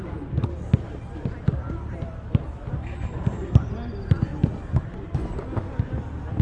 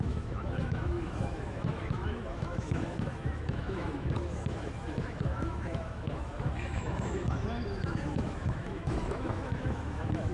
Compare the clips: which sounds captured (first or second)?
first